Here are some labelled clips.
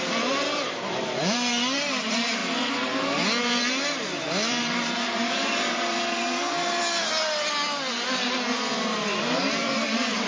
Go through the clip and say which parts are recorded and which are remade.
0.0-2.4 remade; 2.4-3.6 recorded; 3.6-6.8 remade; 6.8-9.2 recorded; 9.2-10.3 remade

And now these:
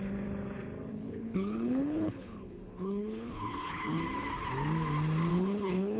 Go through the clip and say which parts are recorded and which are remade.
0.0-0.9 recorded; 0.9-4.0 remade; 4.0-5.3 recorded; 5.3-6.0 remade

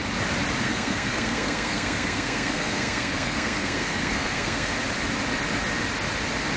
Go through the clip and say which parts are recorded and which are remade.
0.0-0.6 recorded; 0.6-4.7 remade; 4.7-6.6 recorded

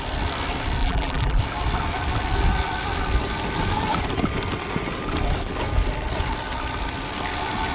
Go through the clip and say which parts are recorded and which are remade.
0.0-0.8 recorded; 0.8-1.4 remade; 1.4-7.7 recorded

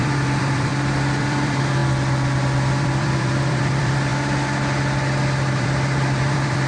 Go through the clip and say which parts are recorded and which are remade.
0.0-0.7 remade; 0.7-1.2 recorded; 1.2-1.8 remade; 1.8-2.7 recorded; 2.7-4.1 remade; 4.1-5.5 recorded; 5.5-6.7 remade

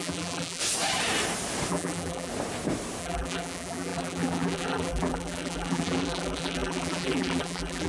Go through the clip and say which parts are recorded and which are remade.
0.0-0.6 remade; 0.6-1.7 recorded; 1.7-2.3 remade; 2.3-3.0 recorded; 3.0-7.9 remade

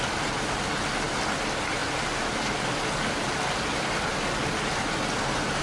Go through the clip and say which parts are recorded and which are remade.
0.0-5.6 recorded